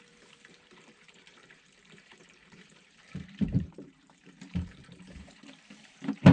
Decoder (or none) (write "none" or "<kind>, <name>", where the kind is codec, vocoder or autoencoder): vocoder, BigVGAN v2